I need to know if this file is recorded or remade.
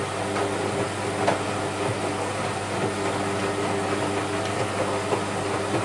recorded